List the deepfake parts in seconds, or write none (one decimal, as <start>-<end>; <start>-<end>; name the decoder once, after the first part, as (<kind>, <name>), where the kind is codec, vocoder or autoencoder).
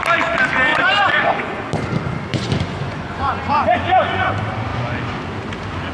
0.7-1.6 (vocoder, Vocos); 2.3-4.3